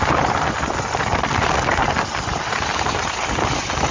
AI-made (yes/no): no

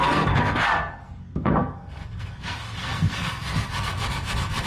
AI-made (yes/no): yes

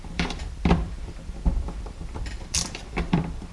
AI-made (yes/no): yes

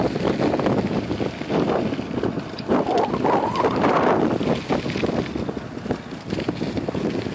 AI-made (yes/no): no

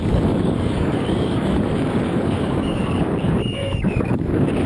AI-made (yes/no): yes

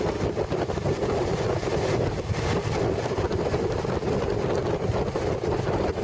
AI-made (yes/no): no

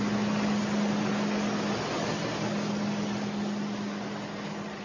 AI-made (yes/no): no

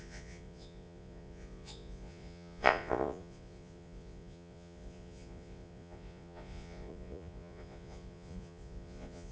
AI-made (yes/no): yes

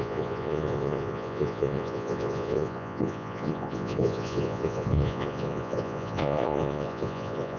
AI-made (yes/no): yes